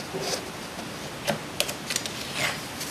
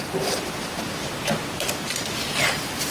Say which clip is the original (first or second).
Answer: first